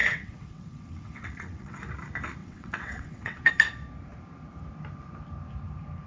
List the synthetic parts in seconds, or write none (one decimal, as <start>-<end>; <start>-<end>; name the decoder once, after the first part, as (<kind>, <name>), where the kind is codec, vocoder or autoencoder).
0.0-1.8 (vocoder, WaveNeXt); 2.4-3.5